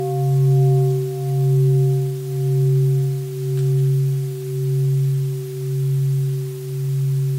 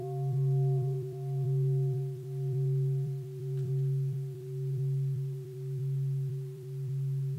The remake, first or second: second